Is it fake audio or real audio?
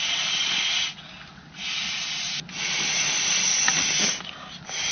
real